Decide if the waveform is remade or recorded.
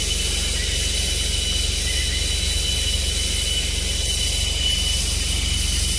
recorded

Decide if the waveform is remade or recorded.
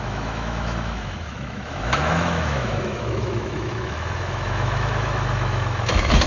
remade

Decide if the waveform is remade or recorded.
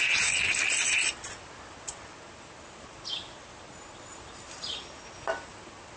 recorded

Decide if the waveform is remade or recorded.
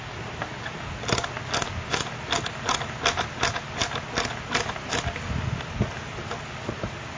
recorded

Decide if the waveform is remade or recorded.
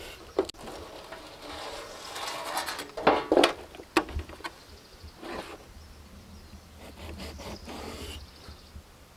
recorded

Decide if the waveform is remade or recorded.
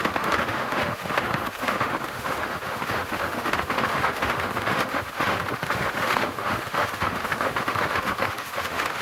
remade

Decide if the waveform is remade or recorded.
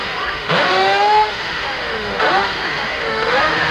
remade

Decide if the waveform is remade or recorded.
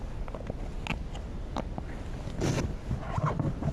recorded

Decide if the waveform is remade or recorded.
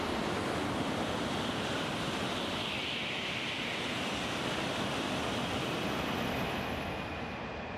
recorded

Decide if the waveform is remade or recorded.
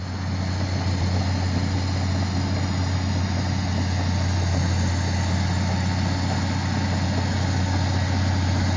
recorded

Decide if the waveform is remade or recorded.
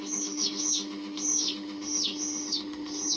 remade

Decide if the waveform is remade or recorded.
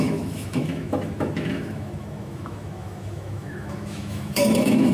remade